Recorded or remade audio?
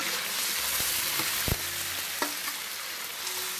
recorded